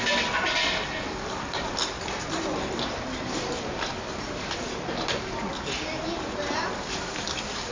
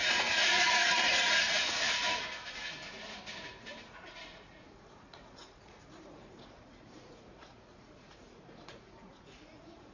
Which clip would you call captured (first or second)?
first